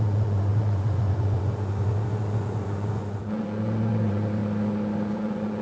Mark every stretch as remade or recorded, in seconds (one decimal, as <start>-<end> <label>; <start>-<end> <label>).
0.0-4.4 remade; 4.4-5.1 recorded; 5.1-5.6 remade